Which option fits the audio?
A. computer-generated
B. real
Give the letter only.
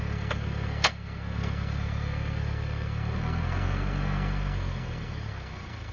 A